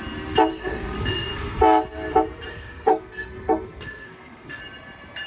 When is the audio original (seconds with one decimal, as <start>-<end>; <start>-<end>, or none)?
0.0-0.5; 1.6-2.5; 4.6-5.3